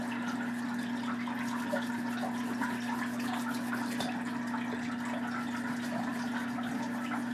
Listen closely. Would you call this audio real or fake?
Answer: real